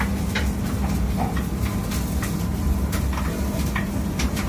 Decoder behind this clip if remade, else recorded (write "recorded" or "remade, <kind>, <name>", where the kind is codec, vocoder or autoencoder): recorded